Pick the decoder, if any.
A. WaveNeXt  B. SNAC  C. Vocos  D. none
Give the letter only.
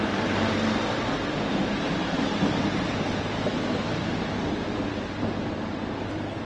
D